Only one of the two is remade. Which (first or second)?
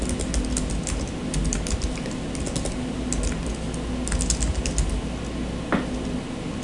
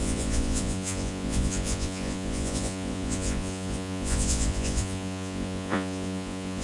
second